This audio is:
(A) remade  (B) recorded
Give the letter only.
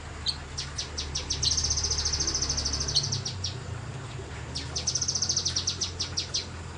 B